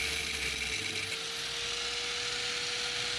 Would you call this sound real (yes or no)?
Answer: yes